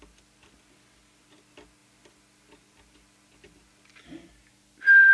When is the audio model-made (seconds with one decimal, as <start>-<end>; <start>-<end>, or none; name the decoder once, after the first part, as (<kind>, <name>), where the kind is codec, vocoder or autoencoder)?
none